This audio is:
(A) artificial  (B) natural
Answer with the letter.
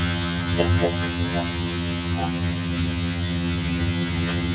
A